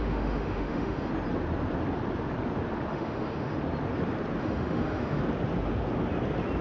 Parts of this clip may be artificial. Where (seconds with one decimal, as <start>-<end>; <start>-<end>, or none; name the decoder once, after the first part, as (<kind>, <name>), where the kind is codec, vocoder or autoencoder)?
0.0-1.1 (autoencoder, DAC-VAE); 2.9-3.6; 4.4-5.2